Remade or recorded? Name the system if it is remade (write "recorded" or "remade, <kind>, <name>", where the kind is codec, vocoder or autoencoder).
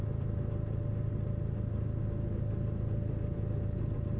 recorded